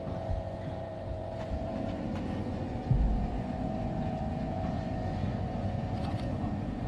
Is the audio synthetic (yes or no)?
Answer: yes